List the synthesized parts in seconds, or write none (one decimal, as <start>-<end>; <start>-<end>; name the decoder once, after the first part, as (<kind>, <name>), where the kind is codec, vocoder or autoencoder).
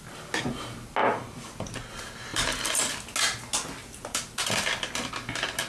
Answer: 1.0-1.9 (vocoder, BigVGAN v2); 2.3-2.9; 3.8-5.1